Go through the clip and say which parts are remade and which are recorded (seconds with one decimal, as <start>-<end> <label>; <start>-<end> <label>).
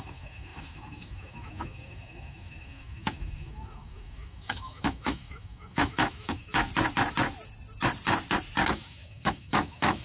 0.0-6.7 remade; 6.7-8.7 recorded; 8.7-10.0 remade